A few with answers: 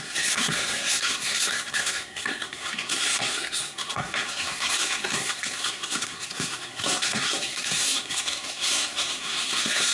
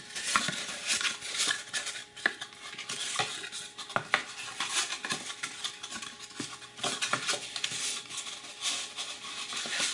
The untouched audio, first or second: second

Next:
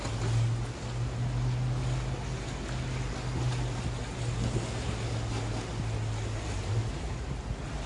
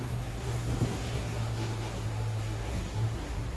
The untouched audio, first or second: first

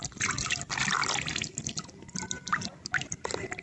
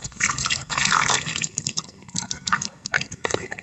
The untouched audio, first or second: first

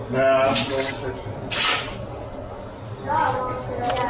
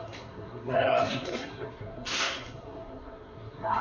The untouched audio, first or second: first